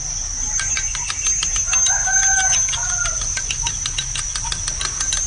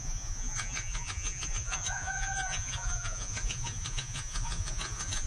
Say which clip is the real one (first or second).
first